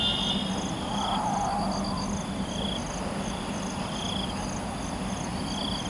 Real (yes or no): yes